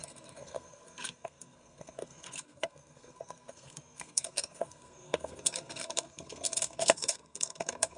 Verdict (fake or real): fake